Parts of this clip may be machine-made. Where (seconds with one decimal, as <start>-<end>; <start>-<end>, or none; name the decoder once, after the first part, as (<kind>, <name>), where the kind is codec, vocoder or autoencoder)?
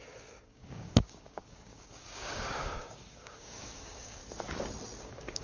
0.0-4.2 (codec, DAC); 5.0-5.4